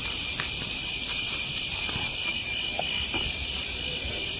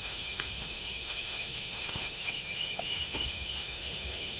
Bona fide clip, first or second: first